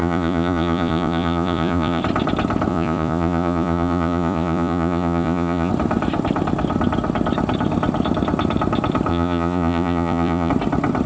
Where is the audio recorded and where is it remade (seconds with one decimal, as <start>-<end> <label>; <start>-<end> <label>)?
0.0-2.0 remade; 2.0-2.7 recorded; 2.7-5.7 remade; 5.7-9.1 recorded; 9.1-10.5 remade; 10.5-11.1 recorded